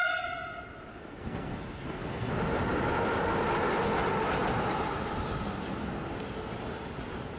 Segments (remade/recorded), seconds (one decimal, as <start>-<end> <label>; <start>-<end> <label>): 0.0-0.9 recorded; 0.9-2.3 remade; 2.3-7.4 recorded

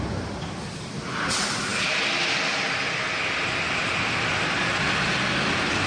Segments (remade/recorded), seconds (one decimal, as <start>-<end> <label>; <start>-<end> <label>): 0.0-5.9 recorded

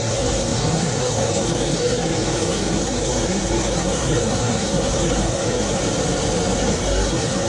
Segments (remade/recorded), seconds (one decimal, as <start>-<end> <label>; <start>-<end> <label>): 0.0-5.8 remade; 5.8-6.6 recorded; 6.6-7.5 remade

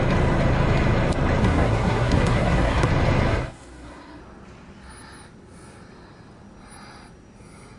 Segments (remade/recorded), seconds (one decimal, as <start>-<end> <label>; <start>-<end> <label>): 0.0-1.4 recorded; 1.4-2.9 remade; 2.9-3.3 recorded; 3.3-4.2 remade; 4.2-7.8 recorded

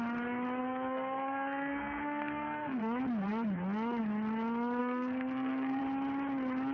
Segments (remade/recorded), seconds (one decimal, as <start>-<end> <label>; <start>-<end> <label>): 0.0-0.6 recorded; 0.6-2.8 remade; 2.8-4.8 recorded; 4.8-5.8 remade; 5.8-6.7 recorded

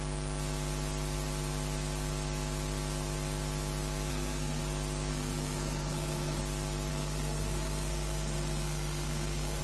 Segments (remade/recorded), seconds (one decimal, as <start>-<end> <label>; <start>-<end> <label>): 0.0-4.1 recorded; 4.1-4.6 remade; 4.6-5.1 recorded; 5.1-6.4 remade; 6.4-6.9 recorded; 6.9-9.6 remade

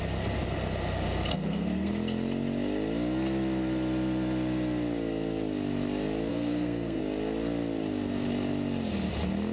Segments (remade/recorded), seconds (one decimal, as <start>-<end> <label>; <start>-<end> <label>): 0.0-1.3 recorded; 1.3-1.9 remade; 1.9-6.3 recorded; 6.3-7.0 remade; 7.0-9.5 recorded

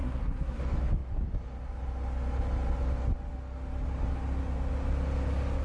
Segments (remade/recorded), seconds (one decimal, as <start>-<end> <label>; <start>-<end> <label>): 0.0-0.6 remade; 0.6-5.6 recorded